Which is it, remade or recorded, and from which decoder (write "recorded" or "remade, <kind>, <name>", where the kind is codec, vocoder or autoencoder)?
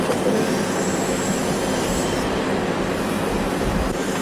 recorded